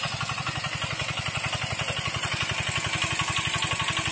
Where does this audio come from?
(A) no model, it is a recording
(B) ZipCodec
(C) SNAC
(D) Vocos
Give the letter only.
A